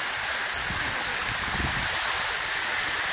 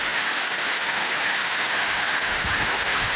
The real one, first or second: first